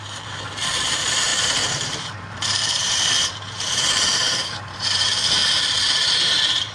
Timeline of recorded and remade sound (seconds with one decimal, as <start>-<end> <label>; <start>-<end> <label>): 0.0-6.7 remade

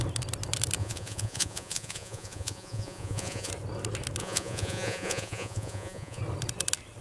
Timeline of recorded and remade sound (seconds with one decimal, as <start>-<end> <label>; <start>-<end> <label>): 0.0-0.8 recorded; 0.8-3.5 remade; 3.5-4.2 recorded; 4.2-6.2 remade; 6.2-7.0 recorded

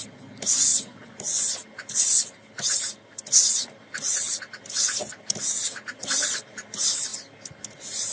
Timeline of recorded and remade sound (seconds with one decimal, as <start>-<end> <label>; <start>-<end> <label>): 0.0-8.1 recorded

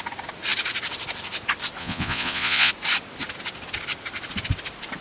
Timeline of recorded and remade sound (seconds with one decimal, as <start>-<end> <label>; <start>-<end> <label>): 0.0-1.8 recorded; 1.8-2.7 remade; 2.7-5.0 recorded

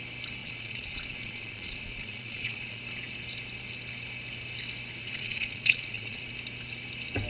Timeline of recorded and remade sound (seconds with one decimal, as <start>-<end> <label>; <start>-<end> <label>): 0.0-0.4 recorded; 0.4-2.8 remade; 2.8-5.0 recorded; 5.0-6.3 remade; 6.3-7.3 recorded

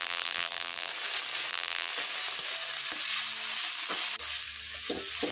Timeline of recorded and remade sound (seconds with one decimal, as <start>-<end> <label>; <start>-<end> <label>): 0.0-0.9 remade; 0.9-1.5 recorded; 1.5-1.9 remade; 1.9-5.3 recorded

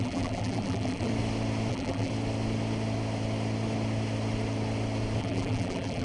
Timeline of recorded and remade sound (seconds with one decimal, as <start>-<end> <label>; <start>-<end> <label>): 0.0-1.1 remade; 1.1-1.7 recorded; 1.7-2.1 remade; 2.1-5.2 recorded; 5.2-6.0 remade

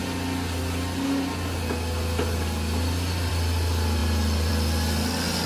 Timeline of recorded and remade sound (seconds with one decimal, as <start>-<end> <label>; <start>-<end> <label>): 0.0-5.5 recorded